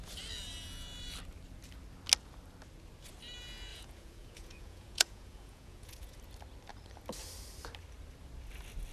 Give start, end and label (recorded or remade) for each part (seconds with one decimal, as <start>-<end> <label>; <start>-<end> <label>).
0.0-3.7 recorded; 3.7-6.2 remade; 6.2-8.9 recorded